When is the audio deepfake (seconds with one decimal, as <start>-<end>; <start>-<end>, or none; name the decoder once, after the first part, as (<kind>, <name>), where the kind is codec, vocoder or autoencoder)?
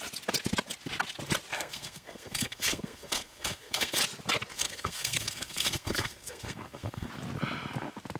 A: 1.5-4.0 (codec, SNAC); 4.5-7.1